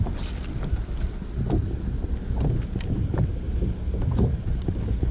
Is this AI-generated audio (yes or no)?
no